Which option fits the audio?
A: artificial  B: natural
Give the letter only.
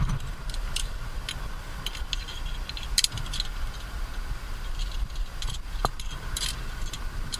B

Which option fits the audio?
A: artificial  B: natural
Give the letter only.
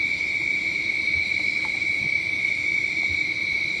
B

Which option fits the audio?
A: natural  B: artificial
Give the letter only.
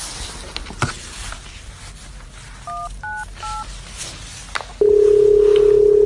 A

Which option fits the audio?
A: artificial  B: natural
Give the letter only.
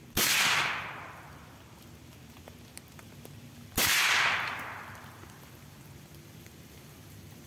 B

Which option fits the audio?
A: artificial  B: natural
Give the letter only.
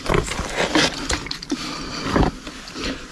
B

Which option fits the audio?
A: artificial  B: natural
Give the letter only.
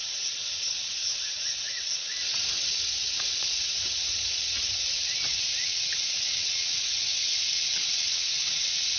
A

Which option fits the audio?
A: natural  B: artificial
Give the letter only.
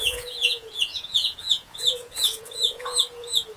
B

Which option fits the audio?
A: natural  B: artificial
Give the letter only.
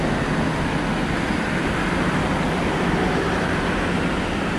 A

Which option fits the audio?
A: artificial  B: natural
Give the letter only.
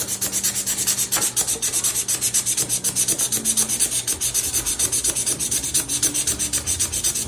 B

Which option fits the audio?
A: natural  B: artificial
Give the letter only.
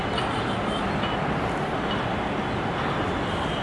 A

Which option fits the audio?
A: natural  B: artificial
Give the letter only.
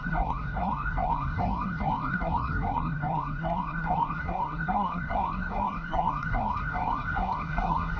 B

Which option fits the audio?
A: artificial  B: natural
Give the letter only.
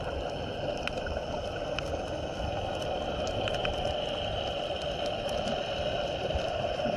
B